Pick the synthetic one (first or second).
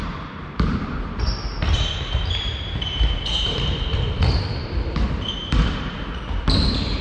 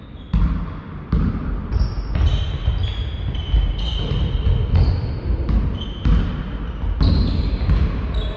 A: first